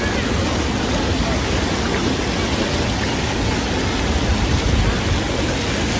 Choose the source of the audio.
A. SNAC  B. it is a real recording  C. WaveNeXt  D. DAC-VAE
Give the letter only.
B